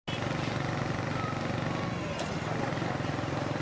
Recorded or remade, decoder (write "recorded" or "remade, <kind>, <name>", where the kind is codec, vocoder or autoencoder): recorded